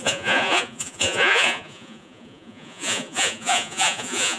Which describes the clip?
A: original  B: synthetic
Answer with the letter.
B